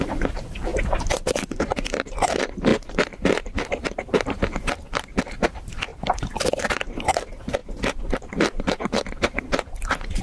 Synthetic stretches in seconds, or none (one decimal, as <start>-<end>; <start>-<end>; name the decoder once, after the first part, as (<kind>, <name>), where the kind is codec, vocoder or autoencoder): 0.0-0.7 (vocoder, BigVGAN v2); 1.5-5.9; 6.6-10.2